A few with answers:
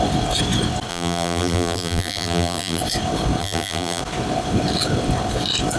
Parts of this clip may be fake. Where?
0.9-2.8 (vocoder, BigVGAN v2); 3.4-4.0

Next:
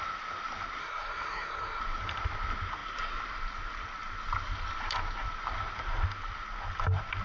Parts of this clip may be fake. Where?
0.8-1.8 (codec, SNAC)

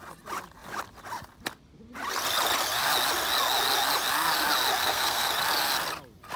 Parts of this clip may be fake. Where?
4.8-5.3 (codec, SNAC)

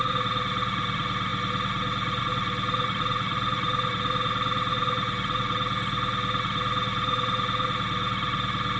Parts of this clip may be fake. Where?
none

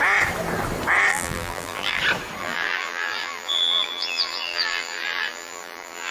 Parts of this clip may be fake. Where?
1.1-2.0 (vocoder, BigVGAN v2); 2.4-6.1

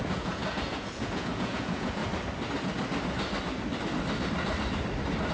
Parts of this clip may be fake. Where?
0.0-2.0 (vocoder, Vocos)

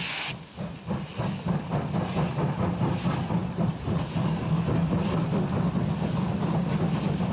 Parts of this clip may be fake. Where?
none

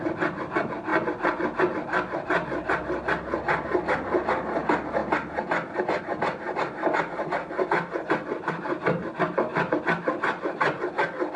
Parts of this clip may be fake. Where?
none